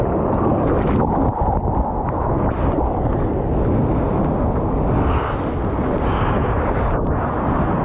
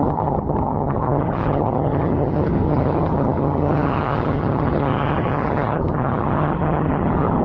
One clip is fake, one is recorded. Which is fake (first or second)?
second